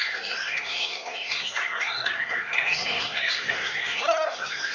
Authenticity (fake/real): fake